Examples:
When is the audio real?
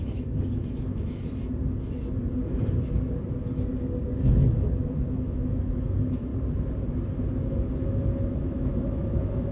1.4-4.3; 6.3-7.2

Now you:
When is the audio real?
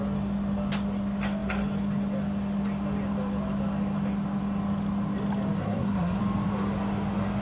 0.0-5.6; 6.2-7.4